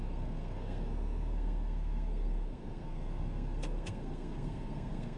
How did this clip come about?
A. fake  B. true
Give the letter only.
A